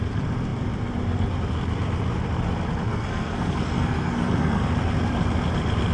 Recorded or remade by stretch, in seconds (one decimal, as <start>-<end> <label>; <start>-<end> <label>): 0.0-2.9 recorded; 2.9-4.7 remade; 4.7-5.9 recorded